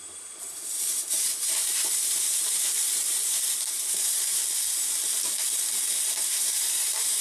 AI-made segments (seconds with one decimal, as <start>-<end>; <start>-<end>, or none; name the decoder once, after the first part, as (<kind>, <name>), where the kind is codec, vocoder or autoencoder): 0.0-4.4 (vocoder, BigVGAN v2); 6.1-7.2